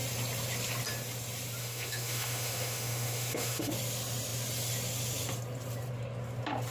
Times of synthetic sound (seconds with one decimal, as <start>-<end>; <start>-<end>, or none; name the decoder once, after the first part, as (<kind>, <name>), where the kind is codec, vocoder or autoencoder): 1.6-3.7 (autoencoder, DAC-VAE)